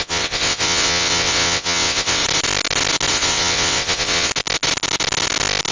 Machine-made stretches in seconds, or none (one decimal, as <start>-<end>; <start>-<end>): 0.0-2.2; 3.1-4.3